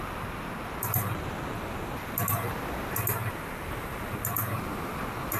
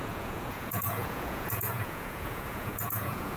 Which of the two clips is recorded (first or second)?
first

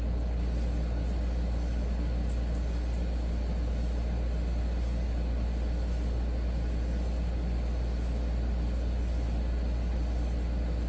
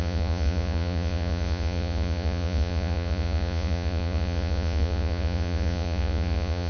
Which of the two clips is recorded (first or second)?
first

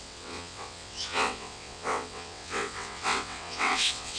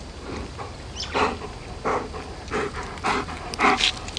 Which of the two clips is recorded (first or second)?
second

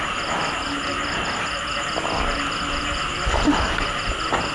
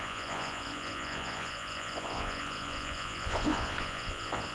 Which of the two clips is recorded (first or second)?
first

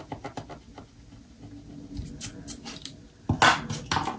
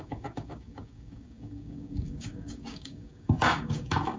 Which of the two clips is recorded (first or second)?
first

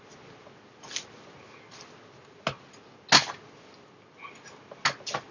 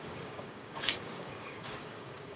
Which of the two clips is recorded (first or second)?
first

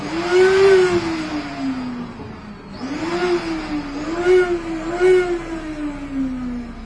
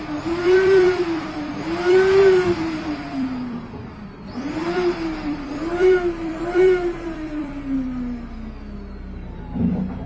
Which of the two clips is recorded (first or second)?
first